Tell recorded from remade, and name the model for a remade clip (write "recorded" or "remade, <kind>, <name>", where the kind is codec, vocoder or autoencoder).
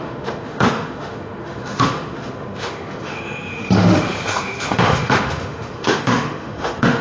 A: remade, autoencoder, DAC-VAE